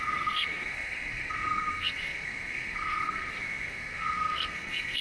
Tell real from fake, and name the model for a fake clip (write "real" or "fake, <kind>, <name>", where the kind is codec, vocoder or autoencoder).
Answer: fake, codec, SNAC